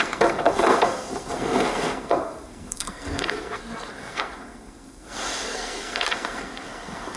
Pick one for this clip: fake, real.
fake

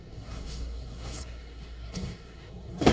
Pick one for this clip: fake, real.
fake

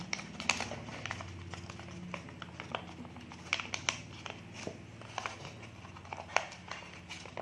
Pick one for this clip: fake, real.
real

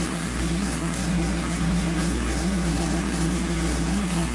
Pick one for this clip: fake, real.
fake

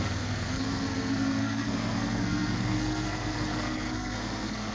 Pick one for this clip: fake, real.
fake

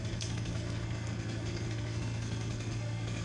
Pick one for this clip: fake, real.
fake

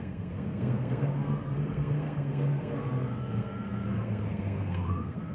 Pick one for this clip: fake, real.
fake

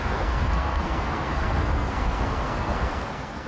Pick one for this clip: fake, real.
fake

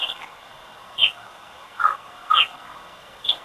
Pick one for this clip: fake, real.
fake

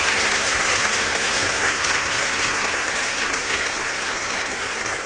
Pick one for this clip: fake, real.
fake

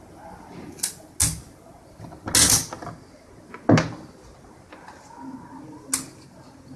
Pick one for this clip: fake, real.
real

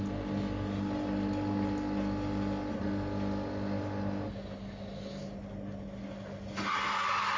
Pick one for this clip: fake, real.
real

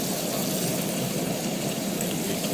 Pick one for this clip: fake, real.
real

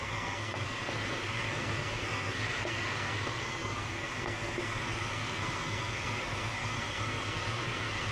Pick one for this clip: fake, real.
fake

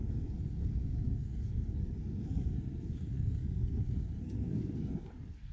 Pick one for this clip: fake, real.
fake